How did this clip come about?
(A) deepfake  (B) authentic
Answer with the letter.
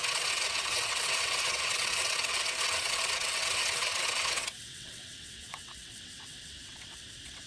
A